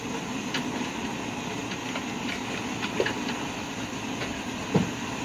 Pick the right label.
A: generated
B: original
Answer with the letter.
B